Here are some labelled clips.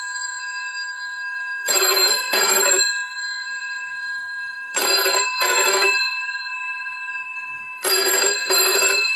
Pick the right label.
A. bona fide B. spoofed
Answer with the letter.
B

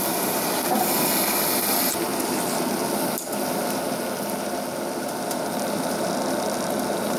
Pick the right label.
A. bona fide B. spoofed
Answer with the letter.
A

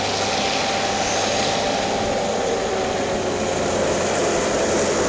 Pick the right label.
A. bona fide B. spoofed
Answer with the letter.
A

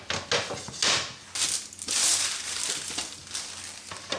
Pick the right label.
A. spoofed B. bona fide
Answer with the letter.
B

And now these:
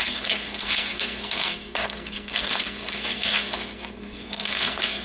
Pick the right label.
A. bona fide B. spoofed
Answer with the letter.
B